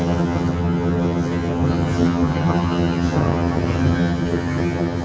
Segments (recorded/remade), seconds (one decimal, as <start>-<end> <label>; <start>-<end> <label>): 0.0-5.0 remade